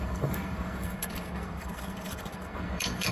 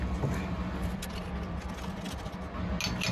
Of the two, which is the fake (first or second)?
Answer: first